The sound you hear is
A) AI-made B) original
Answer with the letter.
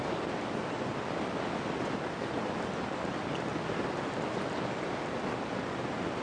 B